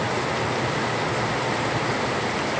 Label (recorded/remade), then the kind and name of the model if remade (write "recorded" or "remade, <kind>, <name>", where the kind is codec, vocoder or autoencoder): recorded